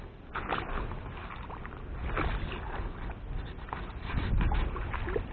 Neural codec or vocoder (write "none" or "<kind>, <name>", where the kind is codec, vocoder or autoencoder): none